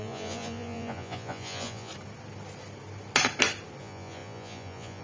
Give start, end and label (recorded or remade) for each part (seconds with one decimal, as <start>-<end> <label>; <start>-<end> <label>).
0.0-1.9 remade; 1.9-3.8 recorded; 3.8-5.0 remade